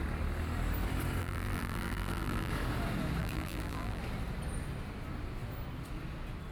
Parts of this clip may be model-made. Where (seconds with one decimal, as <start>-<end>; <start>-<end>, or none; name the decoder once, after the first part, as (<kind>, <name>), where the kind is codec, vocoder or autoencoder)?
1.2-2.5 (vocoder, BigVGAN v2); 3.2-4.0